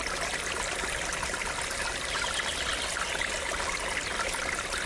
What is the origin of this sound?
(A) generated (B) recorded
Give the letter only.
B